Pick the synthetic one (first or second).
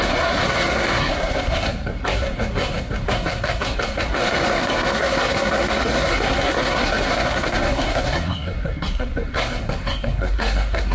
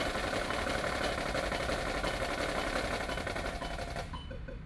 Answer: first